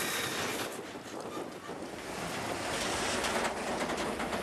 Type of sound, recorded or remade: recorded